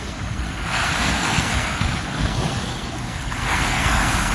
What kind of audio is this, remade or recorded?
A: remade